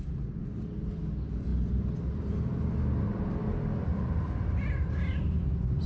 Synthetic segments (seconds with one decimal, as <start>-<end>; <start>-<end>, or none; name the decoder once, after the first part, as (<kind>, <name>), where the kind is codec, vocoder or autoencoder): none